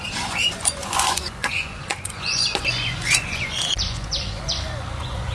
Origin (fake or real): fake